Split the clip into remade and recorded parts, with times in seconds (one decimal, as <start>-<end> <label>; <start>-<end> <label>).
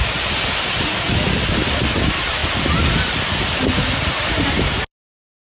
0.0-5.5 recorded